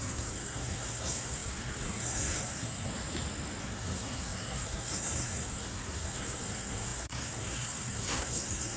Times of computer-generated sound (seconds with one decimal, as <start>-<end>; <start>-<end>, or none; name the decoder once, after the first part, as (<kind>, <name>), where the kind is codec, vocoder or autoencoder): 0.0-2.9 (codec, SNAC); 3.6-8.8